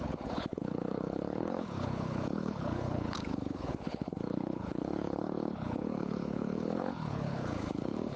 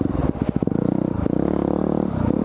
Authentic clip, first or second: second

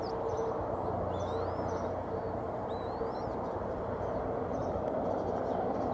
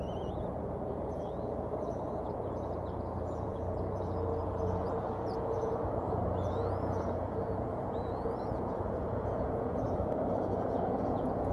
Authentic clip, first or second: first